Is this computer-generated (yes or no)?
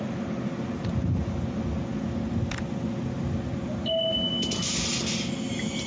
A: no